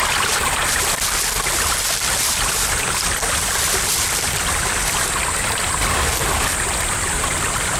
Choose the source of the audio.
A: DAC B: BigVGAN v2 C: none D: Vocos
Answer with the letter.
C